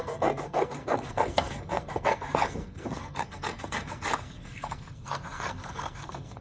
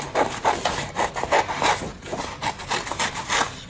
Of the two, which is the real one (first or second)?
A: second